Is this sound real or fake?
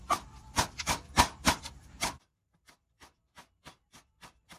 fake